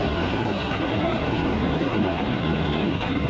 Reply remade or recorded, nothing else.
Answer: remade